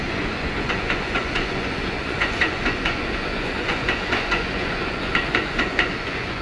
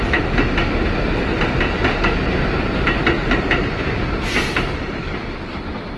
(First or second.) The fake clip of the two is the first